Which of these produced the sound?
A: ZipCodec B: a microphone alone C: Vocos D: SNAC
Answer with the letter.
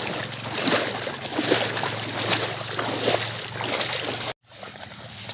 B